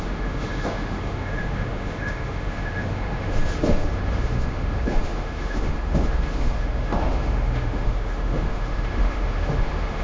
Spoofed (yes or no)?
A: yes